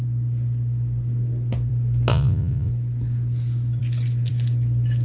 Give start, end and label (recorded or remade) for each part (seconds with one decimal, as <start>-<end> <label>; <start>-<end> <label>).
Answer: 0.0-2.1 recorded; 2.1-2.7 remade; 2.7-5.0 recorded